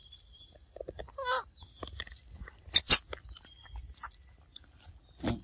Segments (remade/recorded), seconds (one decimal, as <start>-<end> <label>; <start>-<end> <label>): 0.0-1.6 remade; 1.6-5.4 recorded